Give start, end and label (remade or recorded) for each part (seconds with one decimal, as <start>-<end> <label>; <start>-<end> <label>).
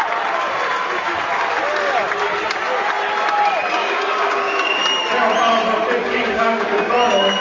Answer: 0.0-3.7 recorded; 3.7-4.8 remade; 4.8-6.0 recorded; 6.0-6.9 remade; 6.9-7.4 recorded